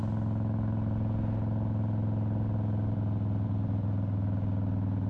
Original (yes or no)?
yes